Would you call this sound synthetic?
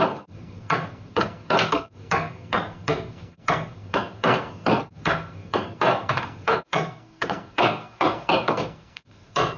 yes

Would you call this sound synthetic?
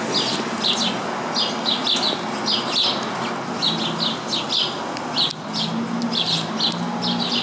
no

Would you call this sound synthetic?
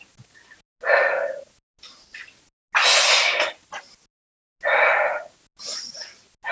no